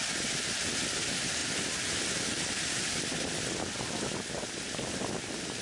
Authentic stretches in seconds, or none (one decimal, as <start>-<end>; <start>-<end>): 0.0-5.6